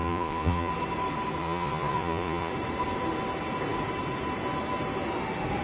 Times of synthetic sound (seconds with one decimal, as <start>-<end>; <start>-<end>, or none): 0.0-0.7; 1.4-2.5